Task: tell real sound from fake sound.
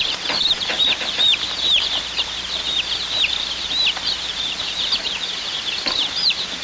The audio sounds fake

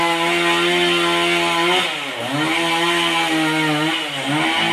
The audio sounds real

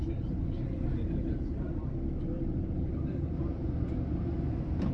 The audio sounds real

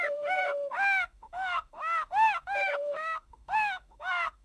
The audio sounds fake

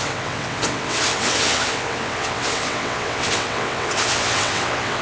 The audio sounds fake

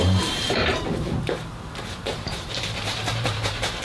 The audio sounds fake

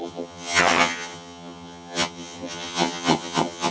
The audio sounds fake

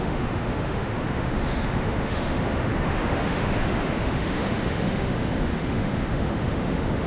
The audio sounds fake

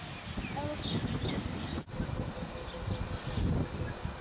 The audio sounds real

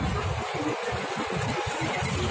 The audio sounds real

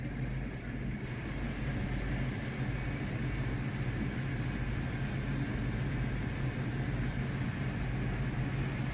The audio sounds real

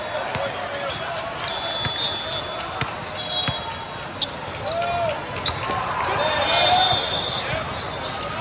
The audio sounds real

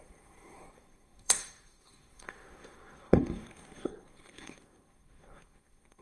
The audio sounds fake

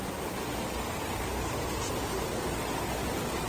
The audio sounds real